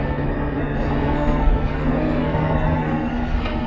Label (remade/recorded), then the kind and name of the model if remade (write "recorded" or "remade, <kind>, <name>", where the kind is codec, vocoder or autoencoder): remade, codec, SNAC